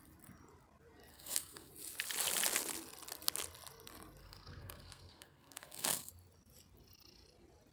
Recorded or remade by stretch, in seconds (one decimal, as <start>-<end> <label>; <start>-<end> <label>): 0.0-1.1 recorded; 1.1-1.7 remade; 1.7-4.2 recorded; 4.2-6.1 remade; 6.1-7.7 recorded